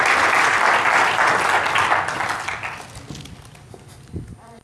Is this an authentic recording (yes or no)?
yes